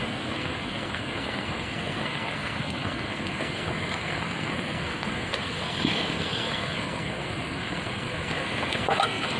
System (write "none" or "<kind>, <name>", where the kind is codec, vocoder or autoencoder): codec, SNAC